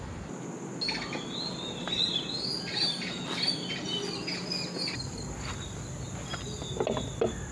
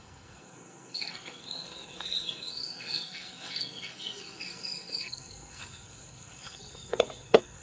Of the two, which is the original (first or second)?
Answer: first